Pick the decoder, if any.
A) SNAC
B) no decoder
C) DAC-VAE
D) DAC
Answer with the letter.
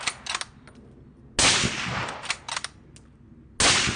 B